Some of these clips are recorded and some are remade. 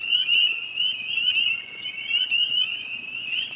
remade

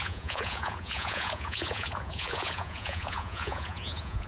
remade